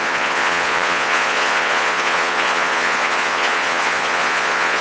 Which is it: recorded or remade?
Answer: remade